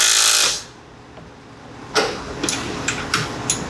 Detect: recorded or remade recorded